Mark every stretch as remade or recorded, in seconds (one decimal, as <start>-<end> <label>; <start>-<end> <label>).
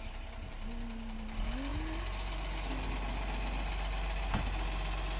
0.0-5.2 recorded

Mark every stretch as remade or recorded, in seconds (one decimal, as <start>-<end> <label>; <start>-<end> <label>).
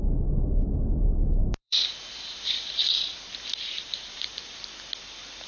0.0-1.4 recorded; 1.4-4.7 remade; 4.7-5.5 recorded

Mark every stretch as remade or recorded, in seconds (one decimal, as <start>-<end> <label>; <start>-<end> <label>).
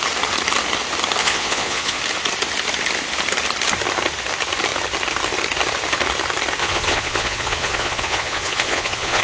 0.0-1.2 recorded; 1.2-2.0 remade; 2.0-6.6 recorded; 6.6-9.2 remade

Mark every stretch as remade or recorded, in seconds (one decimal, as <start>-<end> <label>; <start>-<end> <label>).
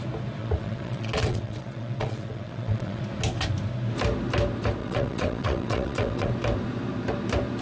0.0-0.4 recorded; 0.4-3.0 remade; 3.0-4.8 recorded; 4.8-6.3 remade; 6.3-7.6 recorded